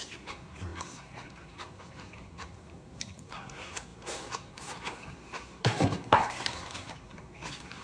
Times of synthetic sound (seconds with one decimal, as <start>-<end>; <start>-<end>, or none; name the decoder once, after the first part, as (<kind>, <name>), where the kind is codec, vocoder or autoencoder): 0.0-7.8 (codec, SNAC)

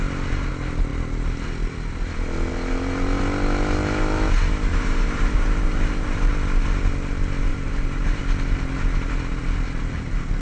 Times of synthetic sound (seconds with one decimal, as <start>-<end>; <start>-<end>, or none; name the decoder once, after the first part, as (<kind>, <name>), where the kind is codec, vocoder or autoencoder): 4.7-6.3 (vocoder, BigVGAN v2); 7.5-8.2

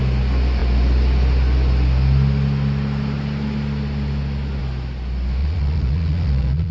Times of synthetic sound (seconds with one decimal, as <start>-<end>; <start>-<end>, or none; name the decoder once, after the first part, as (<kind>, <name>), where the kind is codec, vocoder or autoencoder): 5.4-6.7 (vocoder, Vocos)

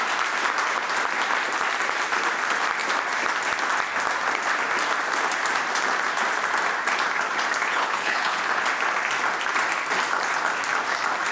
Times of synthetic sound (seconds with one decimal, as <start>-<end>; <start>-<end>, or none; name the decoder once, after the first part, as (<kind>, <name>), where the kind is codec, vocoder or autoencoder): 7.7-8.4 (codec, HILCodec)

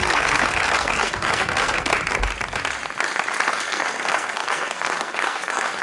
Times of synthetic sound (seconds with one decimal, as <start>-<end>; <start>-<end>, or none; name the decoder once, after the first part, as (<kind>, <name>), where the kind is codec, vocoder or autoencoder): 0.0-1.9 (codec, SNAC); 3.5-5.8

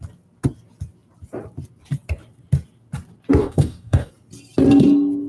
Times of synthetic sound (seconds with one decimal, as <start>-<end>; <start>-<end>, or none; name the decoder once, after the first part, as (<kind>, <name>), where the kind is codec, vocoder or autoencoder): 3.4-4.1 (codec, DAC)